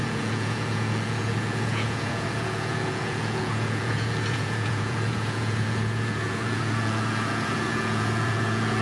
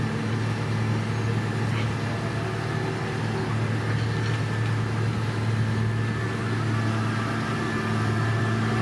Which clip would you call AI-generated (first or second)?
first